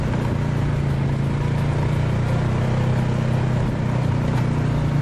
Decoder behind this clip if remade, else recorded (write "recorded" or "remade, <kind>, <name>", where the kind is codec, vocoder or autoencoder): recorded